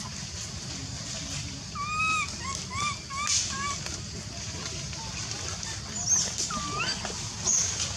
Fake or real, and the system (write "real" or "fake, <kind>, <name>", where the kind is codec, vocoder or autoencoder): real